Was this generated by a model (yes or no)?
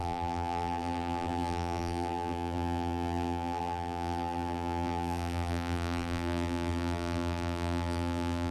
yes